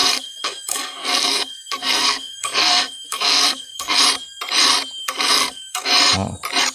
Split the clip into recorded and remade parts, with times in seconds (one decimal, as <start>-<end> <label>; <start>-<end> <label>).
0.0-4.0 remade; 4.0-5.0 recorded; 5.0-5.9 remade; 5.9-6.7 recorded